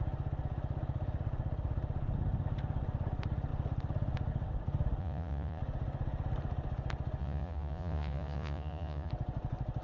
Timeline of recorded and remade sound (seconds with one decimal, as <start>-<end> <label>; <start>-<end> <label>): 0.0-5.0 recorded; 5.0-5.6 remade; 5.6-7.2 recorded; 7.2-9.1 remade; 9.1-9.8 recorded